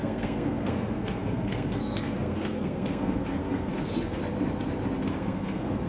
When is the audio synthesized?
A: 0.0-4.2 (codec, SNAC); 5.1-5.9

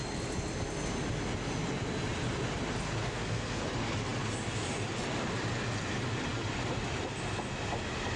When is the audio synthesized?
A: 3.0-3.6 (codec, SNAC)

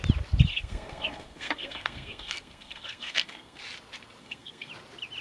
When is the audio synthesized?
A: 0.5-3.6 (codec, SNAC); 4.2-4.7

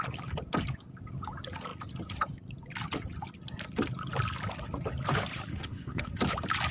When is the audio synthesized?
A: 5.5-6.2 (codec, SNAC)

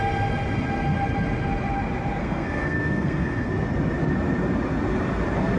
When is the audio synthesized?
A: 2.2-3.5 (codec, SNAC)

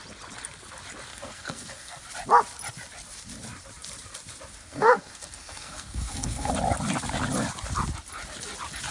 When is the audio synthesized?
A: 1.1-2.0 (codec, SNAC); 4.6-6.5

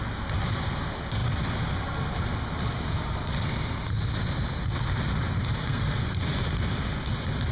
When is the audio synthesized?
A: 5.6-6.2 (codec, SNAC)

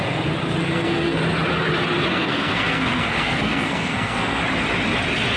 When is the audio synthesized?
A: 0.6-1.2 (codec, SNAC); 2.1-4.4